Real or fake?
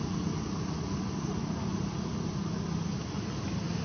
real